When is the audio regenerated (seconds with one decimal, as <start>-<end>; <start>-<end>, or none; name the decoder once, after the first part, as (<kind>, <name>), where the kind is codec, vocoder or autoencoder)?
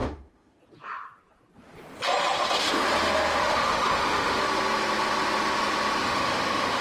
0.0-0.6 (autoencoder, DAC-VAE); 3.4-4.4; 6.0-6.8